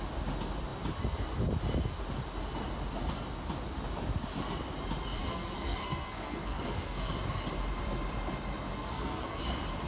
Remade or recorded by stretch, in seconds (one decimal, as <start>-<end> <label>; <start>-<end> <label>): 0.0-5.2 recorded; 5.2-7.1 remade; 7.1-8.7 recorded; 8.7-9.4 remade; 9.4-9.9 recorded